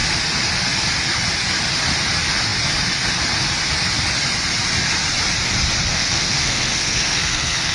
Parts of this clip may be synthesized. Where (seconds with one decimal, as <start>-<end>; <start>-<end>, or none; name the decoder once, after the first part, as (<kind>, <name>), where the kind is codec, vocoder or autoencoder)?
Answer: 5.9-7.7 (codec, SNAC)